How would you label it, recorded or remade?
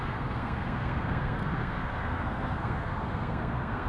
remade